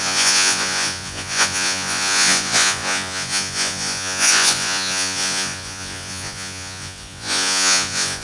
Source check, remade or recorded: remade